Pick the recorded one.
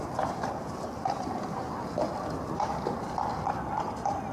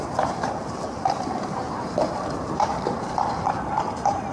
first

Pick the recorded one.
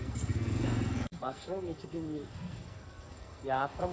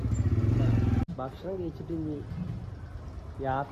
second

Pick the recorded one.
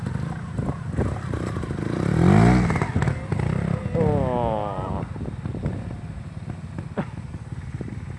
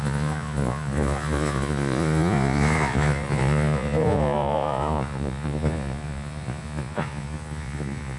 first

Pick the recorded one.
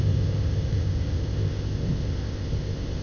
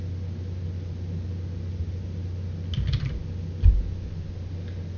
second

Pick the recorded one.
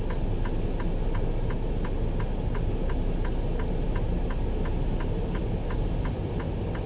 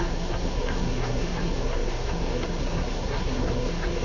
first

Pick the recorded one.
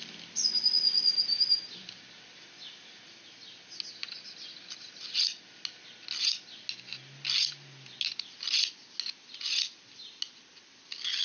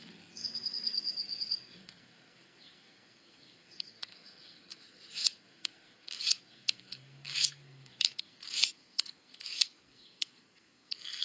first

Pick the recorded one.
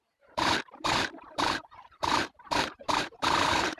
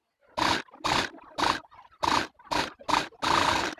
second